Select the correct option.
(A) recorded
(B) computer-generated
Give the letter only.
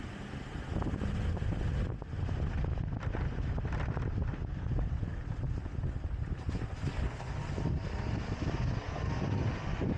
A